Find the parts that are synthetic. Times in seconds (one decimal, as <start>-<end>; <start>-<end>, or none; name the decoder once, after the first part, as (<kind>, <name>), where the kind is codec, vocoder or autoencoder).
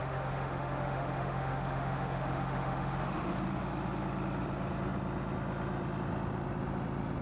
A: 0.0-3.6 (autoencoder, DAC-VAE)